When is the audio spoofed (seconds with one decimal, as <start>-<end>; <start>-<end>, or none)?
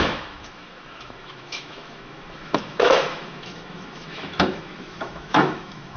0.0-6.0